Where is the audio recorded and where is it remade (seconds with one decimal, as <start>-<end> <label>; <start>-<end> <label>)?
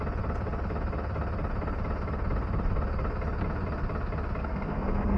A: 0.0-4.4 recorded; 4.4-5.2 remade